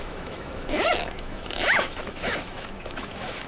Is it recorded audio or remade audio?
remade